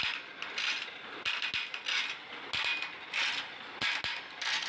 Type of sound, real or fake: real